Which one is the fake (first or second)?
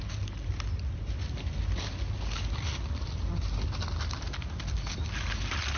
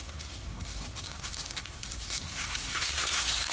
second